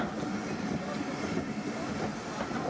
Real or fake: real